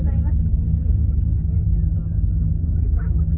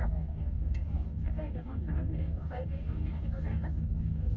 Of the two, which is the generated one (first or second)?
second